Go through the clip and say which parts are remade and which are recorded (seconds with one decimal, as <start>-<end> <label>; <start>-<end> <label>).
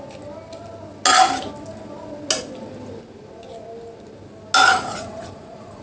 0.0-4.7 recorded; 4.7-5.8 remade